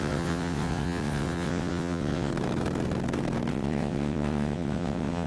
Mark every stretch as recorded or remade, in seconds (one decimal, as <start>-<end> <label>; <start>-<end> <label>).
0.0-2.3 remade; 2.3-3.5 recorded; 3.5-5.3 remade